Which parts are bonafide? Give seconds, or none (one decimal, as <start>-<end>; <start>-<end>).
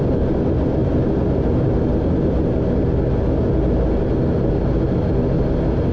0.0-5.9